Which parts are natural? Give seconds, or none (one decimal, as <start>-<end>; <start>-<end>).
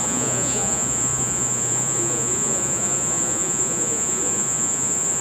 none